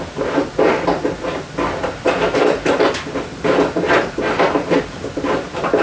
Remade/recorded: recorded